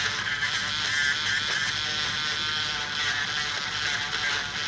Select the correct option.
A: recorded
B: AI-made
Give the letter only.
A